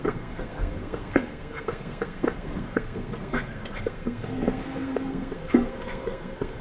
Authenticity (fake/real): fake